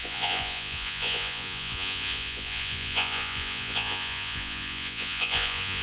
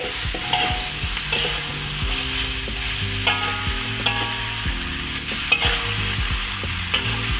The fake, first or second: first